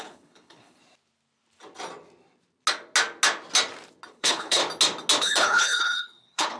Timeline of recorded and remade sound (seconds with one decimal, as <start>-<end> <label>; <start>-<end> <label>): 0.0-0.8 remade; 0.8-4.1 recorded; 4.1-4.6 remade; 4.6-5.2 recorded; 5.2-6.6 remade